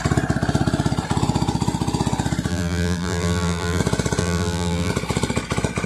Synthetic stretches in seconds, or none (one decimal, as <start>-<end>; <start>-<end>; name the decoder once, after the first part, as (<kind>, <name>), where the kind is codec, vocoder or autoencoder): 2.5-3.8 (vocoder, BigVGAN v2); 4.2-4.9